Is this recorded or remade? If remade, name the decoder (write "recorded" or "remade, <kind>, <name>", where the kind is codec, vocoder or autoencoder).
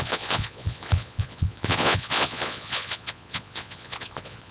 remade, vocoder, Vocos